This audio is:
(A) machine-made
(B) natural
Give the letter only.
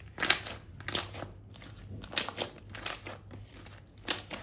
B